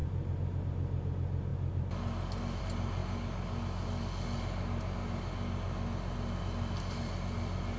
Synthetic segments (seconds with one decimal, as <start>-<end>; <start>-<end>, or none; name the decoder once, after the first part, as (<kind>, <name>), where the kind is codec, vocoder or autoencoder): none